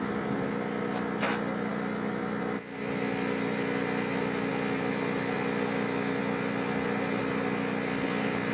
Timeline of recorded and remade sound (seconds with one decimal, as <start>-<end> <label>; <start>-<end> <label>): 0.0-8.5 recorded